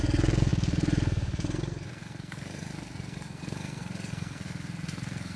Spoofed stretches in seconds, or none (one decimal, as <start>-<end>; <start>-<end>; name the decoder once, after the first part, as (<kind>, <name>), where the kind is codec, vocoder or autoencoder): 0.0-5.4 (codec, SNAC)